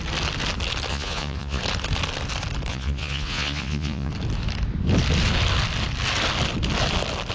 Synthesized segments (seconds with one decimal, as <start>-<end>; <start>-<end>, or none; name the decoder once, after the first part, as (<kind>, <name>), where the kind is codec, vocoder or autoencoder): 0.9-1.6 (vocoder, Vocos); 2.7-4.1